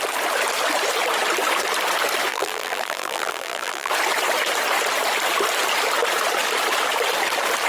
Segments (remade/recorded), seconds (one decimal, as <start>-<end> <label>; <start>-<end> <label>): 0.0-2.3 recorded; 2.3-3.9 remade; 3.9-7.7 recorded